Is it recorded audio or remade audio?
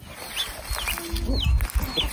recorded